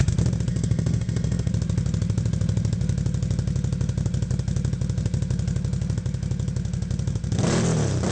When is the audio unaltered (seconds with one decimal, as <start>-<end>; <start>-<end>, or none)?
0.0-0.5; 1.5-8.1